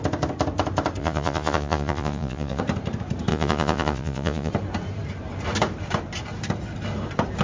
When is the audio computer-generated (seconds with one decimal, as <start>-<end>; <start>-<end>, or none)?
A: 1.0-2.6; 3.3-4.5